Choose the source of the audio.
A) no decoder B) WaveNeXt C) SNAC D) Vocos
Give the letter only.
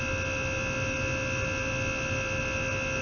A